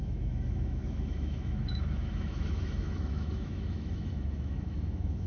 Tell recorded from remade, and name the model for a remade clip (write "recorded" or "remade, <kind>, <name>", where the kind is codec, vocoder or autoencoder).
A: remade, autoencoder, DAC-VAE